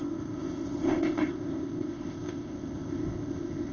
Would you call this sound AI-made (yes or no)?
yes